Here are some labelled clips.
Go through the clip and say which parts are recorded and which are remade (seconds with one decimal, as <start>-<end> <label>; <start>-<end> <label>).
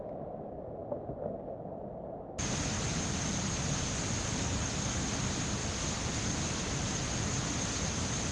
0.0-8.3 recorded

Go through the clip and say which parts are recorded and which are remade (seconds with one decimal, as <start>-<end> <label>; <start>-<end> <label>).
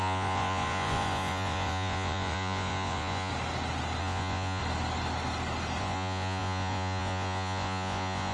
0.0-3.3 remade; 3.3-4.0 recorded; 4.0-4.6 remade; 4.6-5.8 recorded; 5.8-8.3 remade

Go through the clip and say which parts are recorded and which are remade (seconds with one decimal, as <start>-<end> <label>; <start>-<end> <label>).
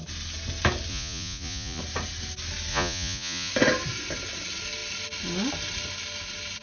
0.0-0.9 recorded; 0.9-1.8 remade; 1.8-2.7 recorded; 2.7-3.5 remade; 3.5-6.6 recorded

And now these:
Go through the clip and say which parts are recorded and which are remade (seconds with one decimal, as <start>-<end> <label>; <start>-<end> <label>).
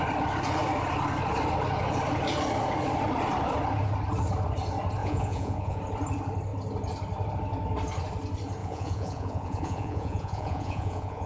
0.0-5.0 recorded; 5.0-5.8 remade; 5.8-8.6 recorded; 8.6-11.3 remade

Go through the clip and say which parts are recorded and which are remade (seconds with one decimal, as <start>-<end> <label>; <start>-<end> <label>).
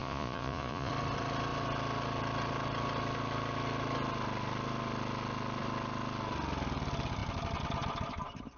0.0-0.9 remade; 0.9-8.6 recorded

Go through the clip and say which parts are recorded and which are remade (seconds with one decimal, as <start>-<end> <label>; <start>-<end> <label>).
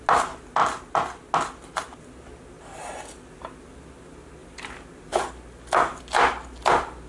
0.0-7.1 recorded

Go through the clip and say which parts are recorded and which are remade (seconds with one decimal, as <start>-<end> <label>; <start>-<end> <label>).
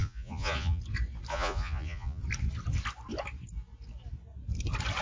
0.0-0.8 remade; 0.8-1.3 recorded; 1.3-2.2 remade; 2.2-5.0 recorded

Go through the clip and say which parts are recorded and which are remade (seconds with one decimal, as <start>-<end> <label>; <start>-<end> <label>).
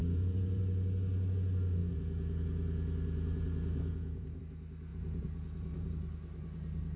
0.0-0.6 remade; 0.6-1.8 recorded; 1.8-4.4 remade; 4.4-4.9 recorded; 4.9-5.9 remade; 5.9-7.0 recorded